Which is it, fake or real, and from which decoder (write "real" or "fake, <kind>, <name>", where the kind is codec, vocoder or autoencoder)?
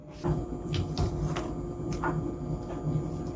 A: real